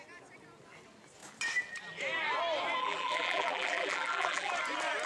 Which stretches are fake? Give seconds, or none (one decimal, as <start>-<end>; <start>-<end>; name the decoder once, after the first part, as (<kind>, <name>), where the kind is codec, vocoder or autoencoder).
2.8-4.5 (vocoder, BigVGAN v2)